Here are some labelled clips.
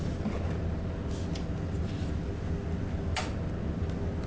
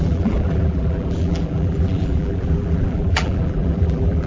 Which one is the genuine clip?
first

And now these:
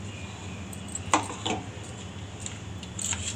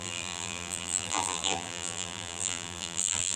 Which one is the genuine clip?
first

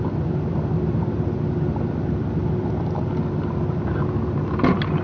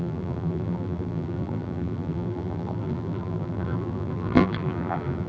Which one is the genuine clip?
first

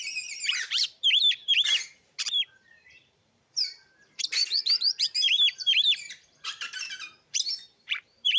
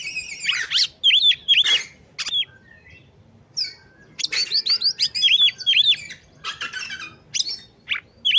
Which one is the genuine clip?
second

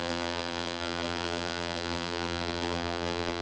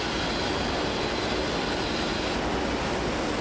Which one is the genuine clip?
second